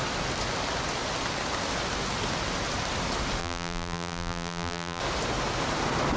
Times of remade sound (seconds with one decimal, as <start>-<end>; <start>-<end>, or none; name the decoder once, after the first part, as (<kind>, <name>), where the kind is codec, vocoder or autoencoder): 3.4-5.0 (vocoder, BigVGAN v2)